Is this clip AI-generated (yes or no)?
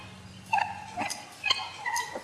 no